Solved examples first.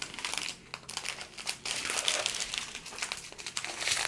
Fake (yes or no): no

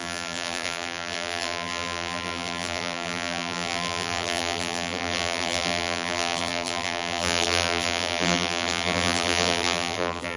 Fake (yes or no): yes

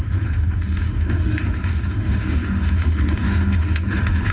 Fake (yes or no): yes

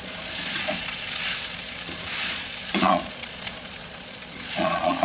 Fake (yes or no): yes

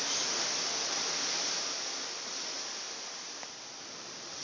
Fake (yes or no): no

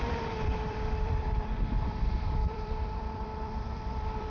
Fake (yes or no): yes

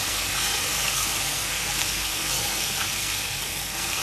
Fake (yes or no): yes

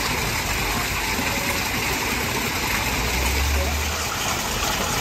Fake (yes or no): no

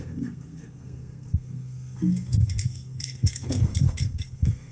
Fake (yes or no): yes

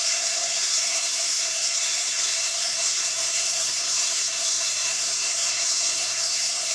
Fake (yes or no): yes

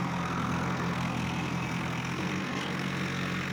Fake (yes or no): yes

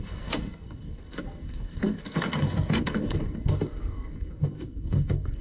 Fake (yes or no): yes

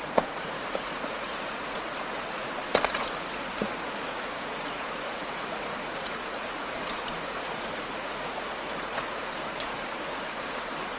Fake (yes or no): yes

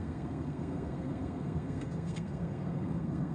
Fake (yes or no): yes